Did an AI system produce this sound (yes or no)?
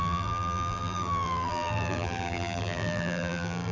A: yes